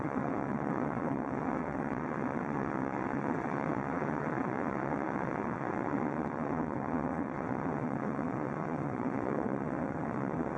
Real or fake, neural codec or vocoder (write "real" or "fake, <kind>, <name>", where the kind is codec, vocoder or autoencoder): fake, vocoder, WaveNeXt